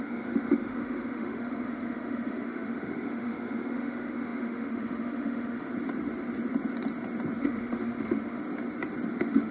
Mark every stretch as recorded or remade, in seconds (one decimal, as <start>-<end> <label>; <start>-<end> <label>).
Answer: 0.0-5.7 remade; 5.7-7.4 recorded; 7.4-8.4 remade; 8.4-9.1 recorded; 9.1-9.5 remade